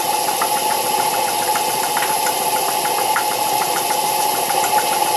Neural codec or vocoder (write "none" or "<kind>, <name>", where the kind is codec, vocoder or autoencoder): none